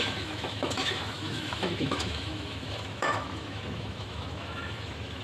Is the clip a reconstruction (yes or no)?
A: yes